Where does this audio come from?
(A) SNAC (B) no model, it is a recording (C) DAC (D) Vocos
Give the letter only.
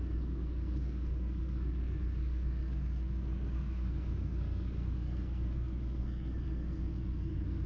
A